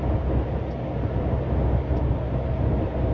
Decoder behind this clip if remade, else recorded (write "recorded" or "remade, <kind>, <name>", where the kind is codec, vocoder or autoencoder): recorded